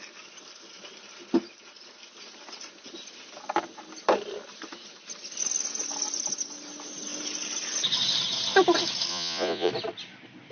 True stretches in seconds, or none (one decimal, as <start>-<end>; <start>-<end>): 0.0-9.1; 9.7-10.5